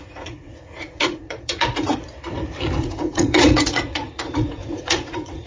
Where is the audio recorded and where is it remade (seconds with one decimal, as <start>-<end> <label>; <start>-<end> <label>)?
0.0-2.0 remade; 2.0-2.8 recorded; 2.8-5.5 remade